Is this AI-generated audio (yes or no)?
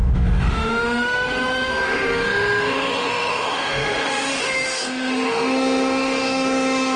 yes